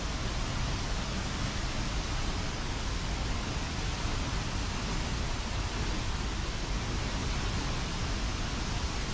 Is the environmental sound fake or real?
real